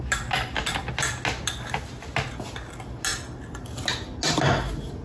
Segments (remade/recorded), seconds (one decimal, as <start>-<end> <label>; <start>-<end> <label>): 0.0-5.0 recorded